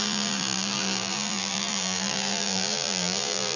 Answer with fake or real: fake